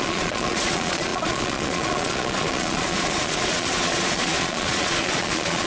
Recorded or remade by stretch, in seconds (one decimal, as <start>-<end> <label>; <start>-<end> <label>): 0.0-5.7 remade